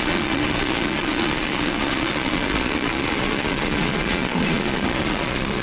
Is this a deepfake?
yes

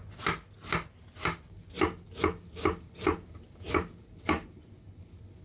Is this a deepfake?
no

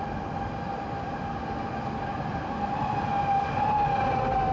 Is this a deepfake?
yes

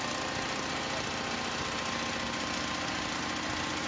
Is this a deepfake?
no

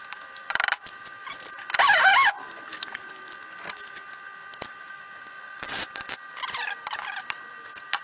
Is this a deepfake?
no